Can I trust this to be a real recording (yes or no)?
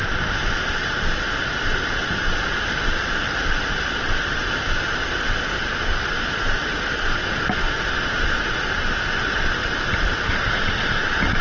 yes